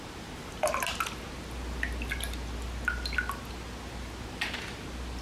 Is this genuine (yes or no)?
yes